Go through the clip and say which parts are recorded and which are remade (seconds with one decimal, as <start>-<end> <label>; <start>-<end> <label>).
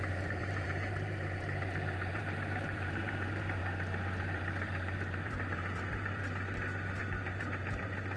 0.0-3.6 remade; 3.6-4.2 recorded; 4.2-6.2 remade; 6.2-6.9 recorded; 6.9-8.2 remade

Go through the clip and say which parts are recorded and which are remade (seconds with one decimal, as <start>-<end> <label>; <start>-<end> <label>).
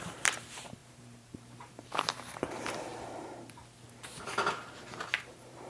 0.0-3.6 remade; 3.6-4.5 recorded; 4.5-5.7 remade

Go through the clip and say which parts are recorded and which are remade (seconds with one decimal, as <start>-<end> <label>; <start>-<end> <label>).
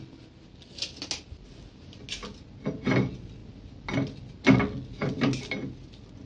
0.0-6.3 recorded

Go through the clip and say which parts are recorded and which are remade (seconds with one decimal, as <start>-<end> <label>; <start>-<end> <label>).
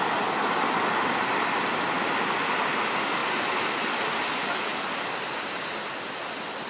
0.0-6.7 recorded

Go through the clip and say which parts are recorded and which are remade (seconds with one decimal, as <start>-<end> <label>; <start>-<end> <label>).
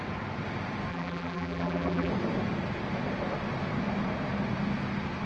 0.0-0.9 recorded; 0.9-2.1 remade; 2.1-5.3 recorded